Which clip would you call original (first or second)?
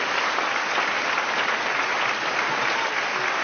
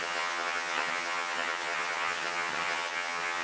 first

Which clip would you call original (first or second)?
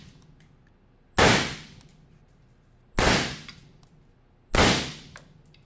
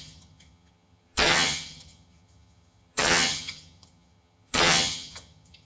first